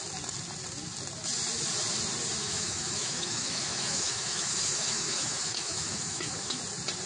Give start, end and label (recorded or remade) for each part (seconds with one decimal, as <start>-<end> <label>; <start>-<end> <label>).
0.0-2.4 recorded; 2.4-6.6 remade; 6.6-7.1 recorded